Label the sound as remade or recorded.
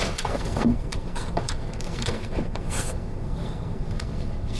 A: remade